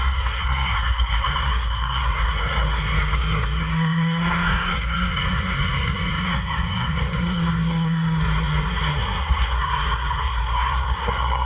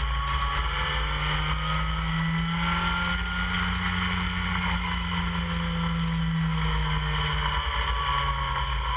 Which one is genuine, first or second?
second